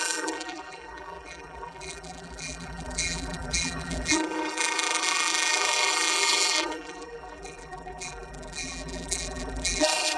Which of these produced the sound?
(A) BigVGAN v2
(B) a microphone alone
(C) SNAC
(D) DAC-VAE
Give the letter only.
A